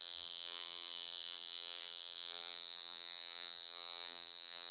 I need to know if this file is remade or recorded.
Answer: remade